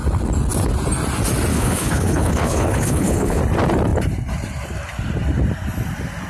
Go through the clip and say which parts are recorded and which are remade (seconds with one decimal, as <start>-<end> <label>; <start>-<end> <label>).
0.0-1.5 recorded; 1.5-3.4 remade; 3.4-6.3 recorded